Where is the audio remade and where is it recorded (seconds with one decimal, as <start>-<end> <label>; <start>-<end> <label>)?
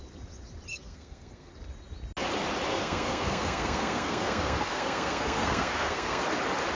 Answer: 0.0-0.7 recorded; 0.7-1.5 remade; 1.5-2.7 recorded; 2.7-6.2 remade; 6.2-6.7 recorded